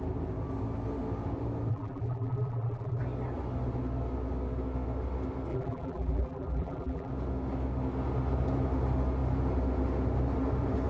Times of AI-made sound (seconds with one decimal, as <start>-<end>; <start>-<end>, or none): 1.7-3.0; 5.5-7.1